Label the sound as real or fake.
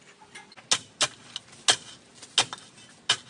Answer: real